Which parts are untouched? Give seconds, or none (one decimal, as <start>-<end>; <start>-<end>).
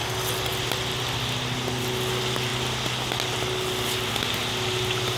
0.6-5.2